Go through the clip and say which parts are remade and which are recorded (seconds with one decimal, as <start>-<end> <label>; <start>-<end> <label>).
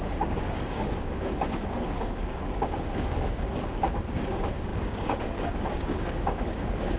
0.0-7.0 remade